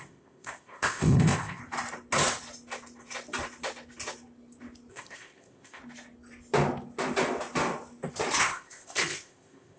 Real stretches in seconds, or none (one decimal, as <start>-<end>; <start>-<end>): 1.6-4.9; 5.8-8.4